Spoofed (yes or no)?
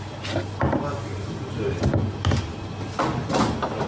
no